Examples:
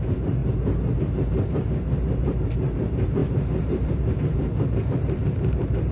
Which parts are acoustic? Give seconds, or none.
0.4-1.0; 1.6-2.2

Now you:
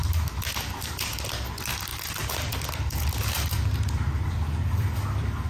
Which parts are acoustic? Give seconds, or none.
none

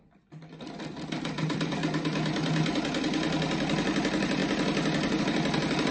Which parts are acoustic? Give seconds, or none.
0.0-5.9

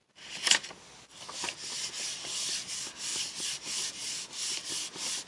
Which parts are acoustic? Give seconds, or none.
0.0-5.3

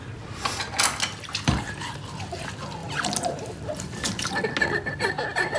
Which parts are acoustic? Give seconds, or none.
0.0-2.8; 4.3-5.6